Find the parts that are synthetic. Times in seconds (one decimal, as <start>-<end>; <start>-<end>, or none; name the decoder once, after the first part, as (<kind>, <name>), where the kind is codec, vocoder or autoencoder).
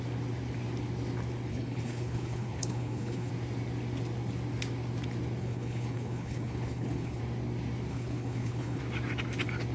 1.5-3.3 (codec, HILCodec); 5.4-7.2; 7.9-8.8